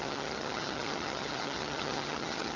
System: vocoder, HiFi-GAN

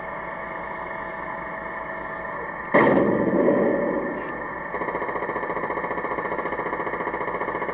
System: none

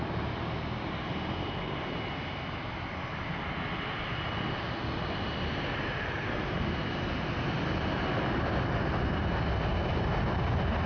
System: none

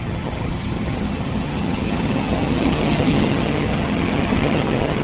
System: vocoder, HiFi-GAN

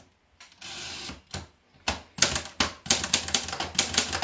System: none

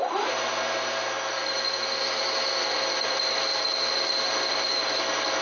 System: none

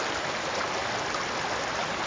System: none